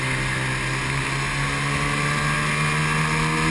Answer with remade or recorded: recorded